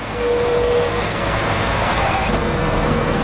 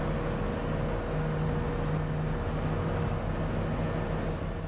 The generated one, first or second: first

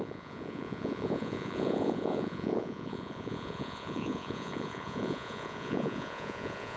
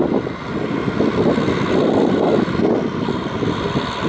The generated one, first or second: first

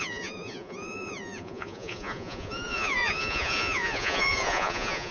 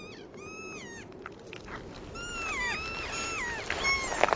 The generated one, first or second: first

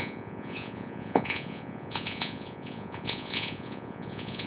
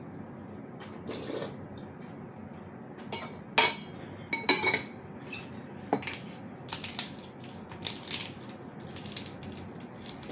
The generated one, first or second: first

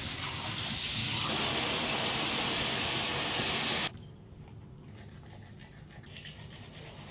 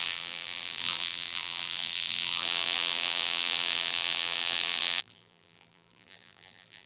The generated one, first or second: second